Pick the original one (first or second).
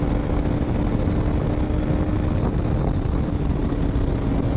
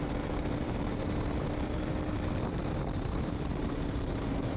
first